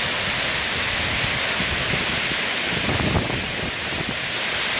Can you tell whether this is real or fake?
real